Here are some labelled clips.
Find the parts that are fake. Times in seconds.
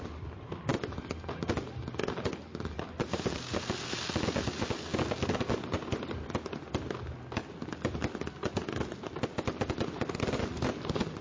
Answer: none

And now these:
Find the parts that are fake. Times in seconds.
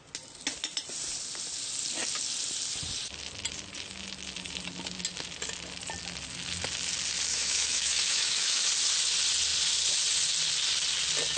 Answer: 7.3-8.7 (autoencoder, DAC-VAE)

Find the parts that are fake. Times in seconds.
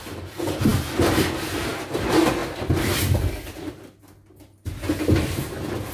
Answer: none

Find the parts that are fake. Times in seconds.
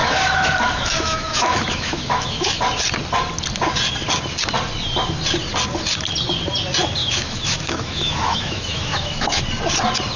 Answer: 0.0-2.6 (autoencoder, DAC-VAE); 7.0-9.4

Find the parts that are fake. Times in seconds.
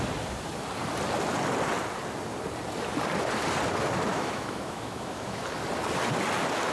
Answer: 4.1-5.4 (autoencoder, DAC-VAE)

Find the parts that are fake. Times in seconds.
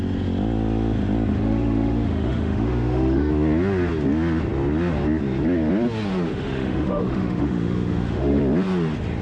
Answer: 1.3-3.3 (autoencoder, DAC-VAE); 6.3-8.4